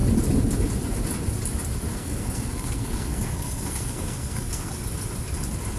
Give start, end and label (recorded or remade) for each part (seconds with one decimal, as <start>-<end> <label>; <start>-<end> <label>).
0.0-1.9 recorded; 1.9-4.7 remade; 4.7-5.8 recorded